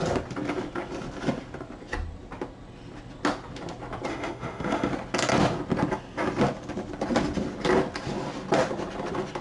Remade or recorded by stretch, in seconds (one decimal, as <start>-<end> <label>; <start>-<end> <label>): 0.0-4.1 recorded; 4.1-4.9 remade; 4.9-9.4 recorded